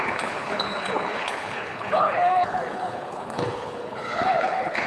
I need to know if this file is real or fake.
fake